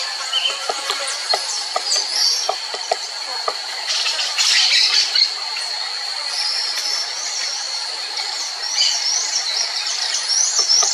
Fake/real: fake